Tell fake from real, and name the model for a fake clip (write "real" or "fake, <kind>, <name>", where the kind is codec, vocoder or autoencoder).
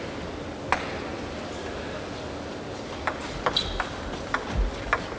real